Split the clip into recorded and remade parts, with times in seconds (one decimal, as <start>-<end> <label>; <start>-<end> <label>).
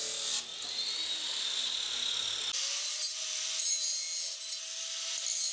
0.0-5.5 recorded